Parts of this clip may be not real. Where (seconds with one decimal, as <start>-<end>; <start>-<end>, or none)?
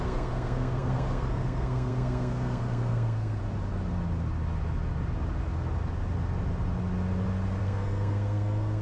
0.0-3.4; 7.6-8.8